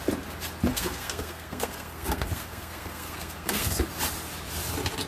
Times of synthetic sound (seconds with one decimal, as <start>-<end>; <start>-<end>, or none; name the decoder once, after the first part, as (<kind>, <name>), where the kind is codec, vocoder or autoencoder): 0.7-3.8 (codec, SNAC)